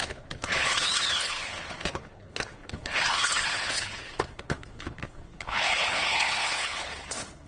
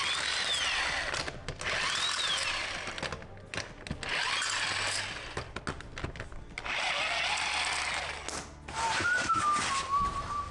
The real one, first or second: second